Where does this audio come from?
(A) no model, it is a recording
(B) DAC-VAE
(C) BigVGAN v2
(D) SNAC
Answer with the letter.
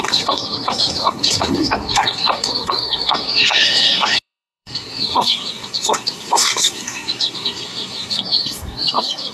D